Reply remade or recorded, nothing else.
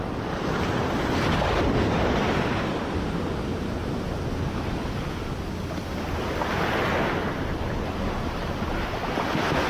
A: recorded